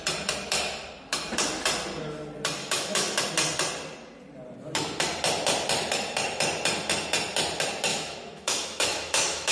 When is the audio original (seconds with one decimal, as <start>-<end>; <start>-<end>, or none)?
0.0-2.6; 3.2-7.9